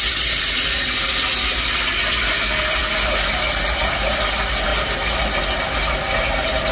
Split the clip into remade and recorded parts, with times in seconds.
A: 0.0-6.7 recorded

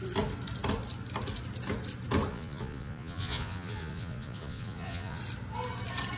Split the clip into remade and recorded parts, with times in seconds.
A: 0.0-2.3 recorded; 2.3-5.2 remade; 5.2-6.2 recorded

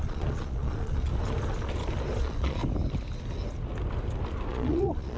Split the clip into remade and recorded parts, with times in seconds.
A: 0.0-1.1 remade; 1.1-2.2 recorded; 2.2-2.6 remade; 2.6-4.5 recorded; 4.5-5.2 remade

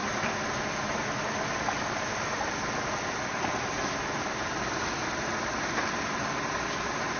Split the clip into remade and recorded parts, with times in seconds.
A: 0.0-7.2 recorded